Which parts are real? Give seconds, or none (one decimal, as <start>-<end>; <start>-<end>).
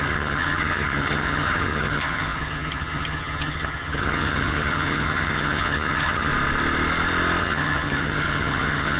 6.3-7.4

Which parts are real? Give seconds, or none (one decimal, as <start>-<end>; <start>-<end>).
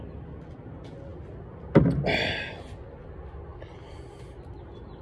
0.0-5.0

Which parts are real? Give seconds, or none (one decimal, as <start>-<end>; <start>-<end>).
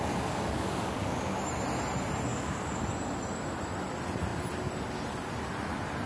1.4-2.3; 2.8-6.1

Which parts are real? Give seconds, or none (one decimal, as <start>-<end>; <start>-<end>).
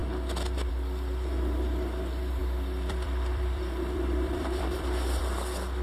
0.0-2.4; 5.2-5.8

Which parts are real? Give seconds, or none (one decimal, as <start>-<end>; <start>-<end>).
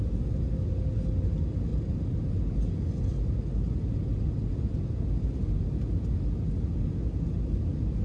0.0-8.0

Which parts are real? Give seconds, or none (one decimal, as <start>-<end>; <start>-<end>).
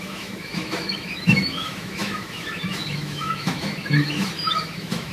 none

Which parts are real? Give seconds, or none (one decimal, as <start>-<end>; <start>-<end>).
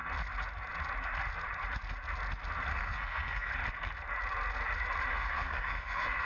0.0-2.7; 3.5-5.1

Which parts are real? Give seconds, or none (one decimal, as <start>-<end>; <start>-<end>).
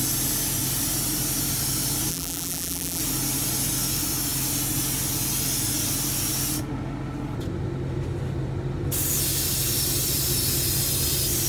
0.0-2.1; 3.0-11.5